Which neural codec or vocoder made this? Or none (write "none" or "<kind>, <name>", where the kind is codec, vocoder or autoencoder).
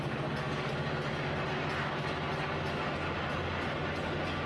none